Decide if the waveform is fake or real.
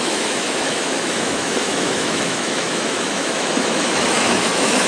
fake